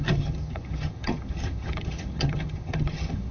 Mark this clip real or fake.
fake